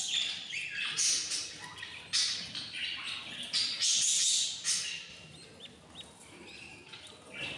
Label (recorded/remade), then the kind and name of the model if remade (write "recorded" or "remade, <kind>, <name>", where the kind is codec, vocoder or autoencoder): recorded